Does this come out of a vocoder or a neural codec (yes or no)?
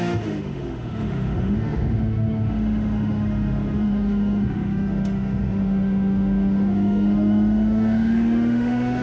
yes